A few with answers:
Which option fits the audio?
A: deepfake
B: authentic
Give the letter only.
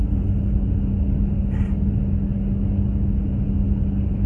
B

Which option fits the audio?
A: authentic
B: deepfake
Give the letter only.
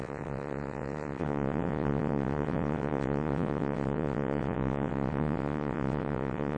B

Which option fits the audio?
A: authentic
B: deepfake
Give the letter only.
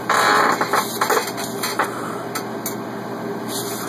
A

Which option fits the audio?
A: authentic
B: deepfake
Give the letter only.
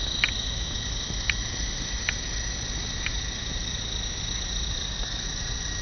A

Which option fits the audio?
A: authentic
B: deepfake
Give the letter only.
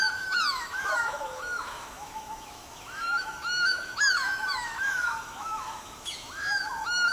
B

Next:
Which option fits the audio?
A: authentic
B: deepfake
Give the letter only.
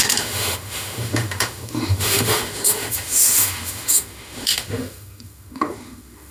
B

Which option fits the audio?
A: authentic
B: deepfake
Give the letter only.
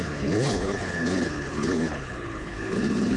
B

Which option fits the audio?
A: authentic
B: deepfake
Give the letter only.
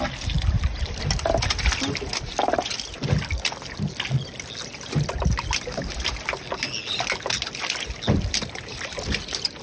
A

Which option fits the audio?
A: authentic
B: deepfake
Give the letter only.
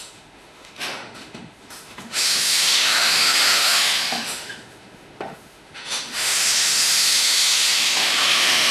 B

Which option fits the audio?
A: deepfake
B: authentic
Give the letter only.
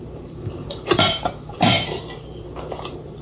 A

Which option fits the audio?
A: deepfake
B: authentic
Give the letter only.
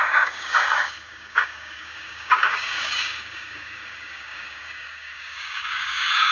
A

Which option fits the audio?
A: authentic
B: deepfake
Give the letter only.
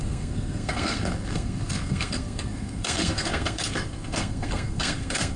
B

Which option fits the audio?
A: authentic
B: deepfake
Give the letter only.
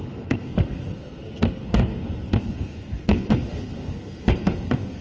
B